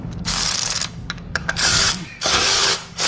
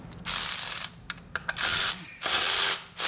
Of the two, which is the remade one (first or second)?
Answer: first